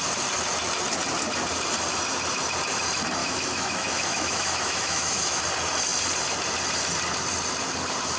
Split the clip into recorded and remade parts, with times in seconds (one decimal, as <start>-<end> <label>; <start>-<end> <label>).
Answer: 0.0-3.2 recorded; 3.2-5.4 remade; 5.4-8.2 recorded